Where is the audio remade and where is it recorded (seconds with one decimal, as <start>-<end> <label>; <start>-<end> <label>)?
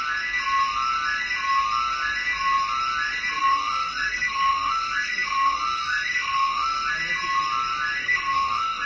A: 0.0-3.4 recorded; 3.4-6.9 remade; 6.9-8.0 recorded; 8.0-8.9 remade